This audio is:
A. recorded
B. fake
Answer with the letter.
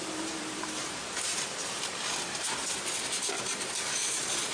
B